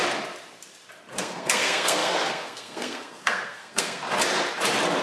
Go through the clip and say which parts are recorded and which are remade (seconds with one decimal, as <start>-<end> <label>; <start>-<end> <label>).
0.0-1.2 recorded; 1.2-4.0 remade; 4.0-5.0 recorded